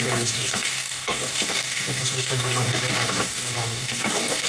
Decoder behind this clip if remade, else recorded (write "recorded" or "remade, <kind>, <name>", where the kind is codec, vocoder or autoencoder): remade, codec, DAC